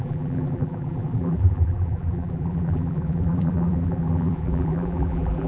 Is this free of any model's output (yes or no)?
no